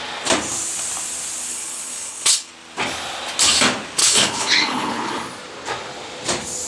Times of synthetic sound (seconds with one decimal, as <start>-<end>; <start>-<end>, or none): 1.5-2.5; 4.0-5.1